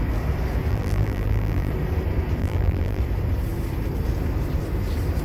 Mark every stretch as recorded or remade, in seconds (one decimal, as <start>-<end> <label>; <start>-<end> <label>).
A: 0.0-0.7 recorded; 0.7-1.7 remade; 1.7-2.4 recorded; 2.4-3.0 remade; 3.0-5.2 recorded